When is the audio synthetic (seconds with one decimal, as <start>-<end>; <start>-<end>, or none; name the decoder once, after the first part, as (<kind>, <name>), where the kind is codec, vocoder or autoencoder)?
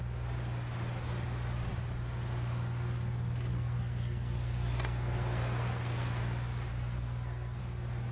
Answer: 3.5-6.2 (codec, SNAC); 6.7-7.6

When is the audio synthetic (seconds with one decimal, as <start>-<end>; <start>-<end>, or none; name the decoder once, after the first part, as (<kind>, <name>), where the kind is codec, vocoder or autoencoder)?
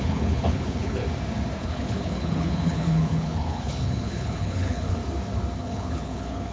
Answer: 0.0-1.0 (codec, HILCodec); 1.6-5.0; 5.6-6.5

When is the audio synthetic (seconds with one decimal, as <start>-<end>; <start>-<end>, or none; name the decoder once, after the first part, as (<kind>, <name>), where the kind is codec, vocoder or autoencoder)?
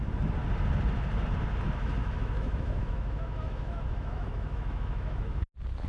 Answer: 2.0-5.5 (autoencoder, DAC-VAE)